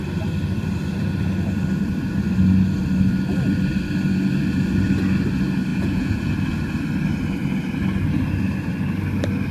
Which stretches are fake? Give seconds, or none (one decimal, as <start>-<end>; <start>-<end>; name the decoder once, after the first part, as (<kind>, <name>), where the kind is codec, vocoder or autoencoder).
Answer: 5.7-6.3 (vocoder, Vocos)